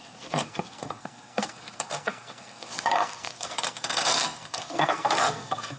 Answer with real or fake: fake